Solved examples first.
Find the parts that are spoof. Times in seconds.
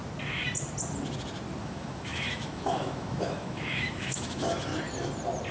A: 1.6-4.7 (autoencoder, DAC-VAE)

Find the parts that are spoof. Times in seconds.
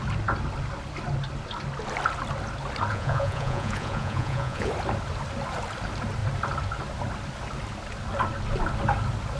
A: 2.9-4.7 (vocoder, Vocos)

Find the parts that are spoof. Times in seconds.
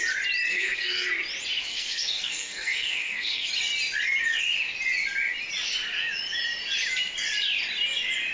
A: 0.5-1.1 (codec, SNAC); 1.7-3.5